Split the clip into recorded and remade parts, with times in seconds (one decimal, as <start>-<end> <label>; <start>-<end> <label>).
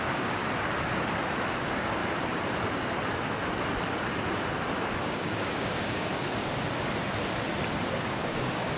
0.0-0.4 remade; 0.4-1.5 recorded; 1.5-2.0 remade; 2.0-5.1 recorded; 5.1-6.4 remade; 6.4-7.9 recorded; 7.9-8.8 remade